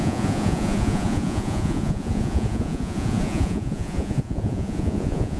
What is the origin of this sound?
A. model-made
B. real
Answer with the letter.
A